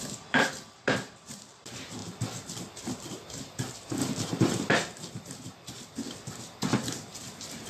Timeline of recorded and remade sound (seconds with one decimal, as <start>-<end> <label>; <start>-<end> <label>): 0.0-7.7 remade